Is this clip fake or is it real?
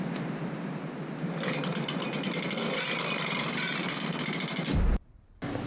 real